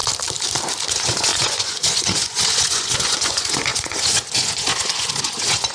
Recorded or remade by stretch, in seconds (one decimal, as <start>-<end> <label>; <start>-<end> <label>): 0.0-0.9 recorded; 0.9-5.7 remade